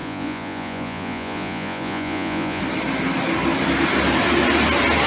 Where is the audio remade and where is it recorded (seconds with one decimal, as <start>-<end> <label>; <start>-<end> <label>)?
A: 0.0-2.6 remade; 2.6-5.1 recorded